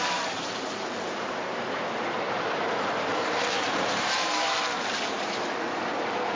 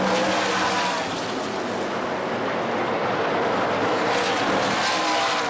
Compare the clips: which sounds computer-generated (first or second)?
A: first